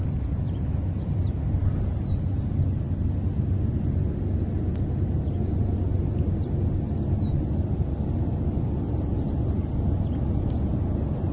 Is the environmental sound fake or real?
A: real